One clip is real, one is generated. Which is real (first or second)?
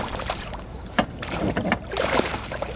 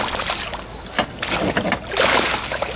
second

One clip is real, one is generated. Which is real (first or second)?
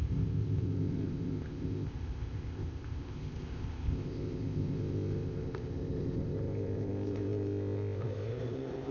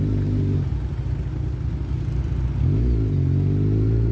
second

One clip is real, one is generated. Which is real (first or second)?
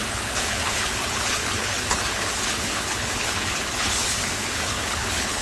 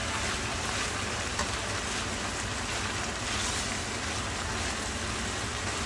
second